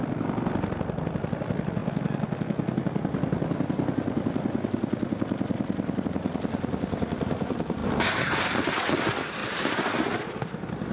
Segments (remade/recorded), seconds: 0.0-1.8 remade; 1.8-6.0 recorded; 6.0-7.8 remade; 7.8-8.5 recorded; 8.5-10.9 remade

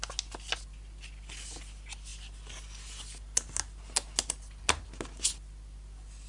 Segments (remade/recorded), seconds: 0.0-6.3 recorded

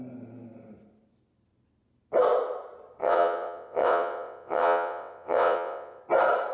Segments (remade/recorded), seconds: 0.0-3.0 recorded; 3.0-6.0 remade; 6.0-6.5 recorded

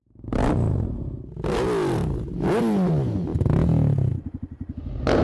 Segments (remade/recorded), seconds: 0.0-5.2 recorded